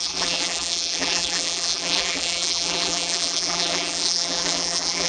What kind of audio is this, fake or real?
fake